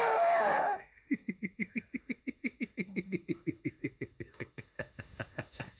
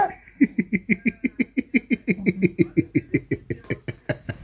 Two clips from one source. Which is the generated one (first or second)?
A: first